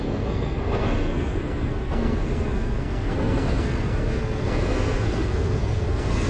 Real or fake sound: fake